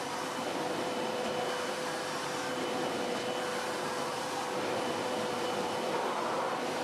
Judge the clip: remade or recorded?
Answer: remade